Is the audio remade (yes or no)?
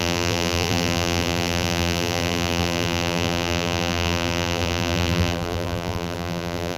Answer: yes